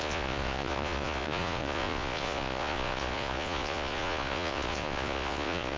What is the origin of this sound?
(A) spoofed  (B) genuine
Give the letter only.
A